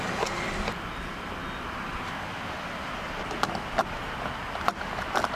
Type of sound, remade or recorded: recorded